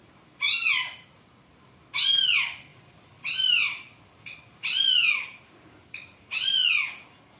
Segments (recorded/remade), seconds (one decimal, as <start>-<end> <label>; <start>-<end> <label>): 0.0-2.7 recorded; 2.7-6.7 remade; 6.7-7.4 recorded